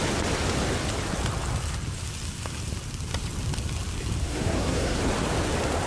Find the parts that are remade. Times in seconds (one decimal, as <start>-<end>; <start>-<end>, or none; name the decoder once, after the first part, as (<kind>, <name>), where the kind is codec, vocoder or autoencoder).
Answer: 4.2-5.0 (codec, SNAC)